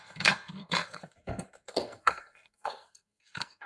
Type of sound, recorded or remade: remade